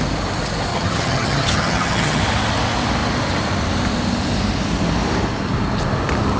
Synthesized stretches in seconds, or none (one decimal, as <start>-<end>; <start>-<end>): 0.7-2.2